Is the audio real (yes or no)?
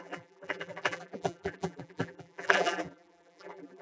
no